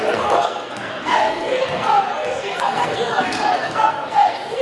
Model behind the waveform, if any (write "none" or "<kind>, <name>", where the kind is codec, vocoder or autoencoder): codec, SNAC